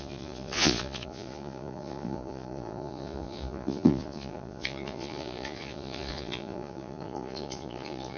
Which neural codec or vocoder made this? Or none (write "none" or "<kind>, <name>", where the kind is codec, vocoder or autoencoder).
vocoder, Vocos